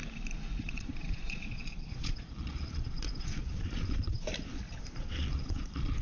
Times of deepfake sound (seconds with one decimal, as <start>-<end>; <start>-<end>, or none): 0.6-4.2; 4.8-6.0